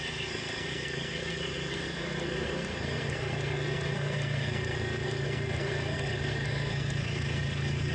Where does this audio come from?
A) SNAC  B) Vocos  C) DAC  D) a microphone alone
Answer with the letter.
A